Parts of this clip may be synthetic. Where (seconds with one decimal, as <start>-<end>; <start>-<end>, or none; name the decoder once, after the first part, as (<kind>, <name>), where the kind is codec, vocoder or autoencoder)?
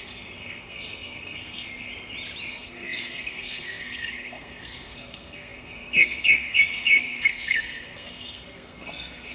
0.0-1.9 (codec, SNAC); 2.5-9.3